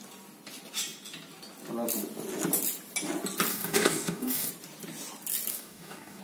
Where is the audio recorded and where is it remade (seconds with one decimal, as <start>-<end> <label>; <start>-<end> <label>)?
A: 0.0-3.5 recorded; 3.5-4.5 remade; 4.5-5.5 recorded; 5.5-6.2 remade